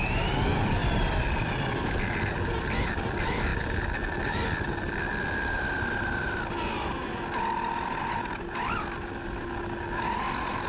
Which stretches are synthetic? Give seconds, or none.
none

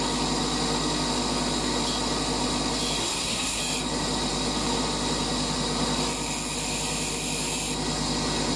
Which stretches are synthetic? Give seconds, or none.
3.0-3.6 (codec, SNAC)